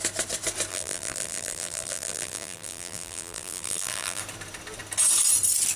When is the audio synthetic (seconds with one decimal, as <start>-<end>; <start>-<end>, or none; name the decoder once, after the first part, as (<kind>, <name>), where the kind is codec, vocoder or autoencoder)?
0.7-4.2 (vocoder, BigVGAN v2)